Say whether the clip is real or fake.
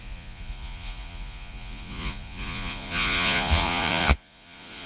fake